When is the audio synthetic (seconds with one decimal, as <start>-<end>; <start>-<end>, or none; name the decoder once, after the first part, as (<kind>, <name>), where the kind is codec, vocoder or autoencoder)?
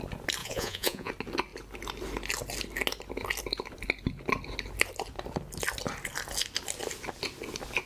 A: 0.4-1.1 (vocoder, Vocos)